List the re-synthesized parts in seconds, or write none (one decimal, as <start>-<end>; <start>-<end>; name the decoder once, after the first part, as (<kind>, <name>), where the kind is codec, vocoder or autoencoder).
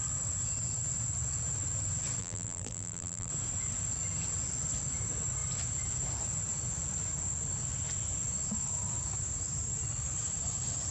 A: 2.2-3.3 (vocoder, BigVGAN v2)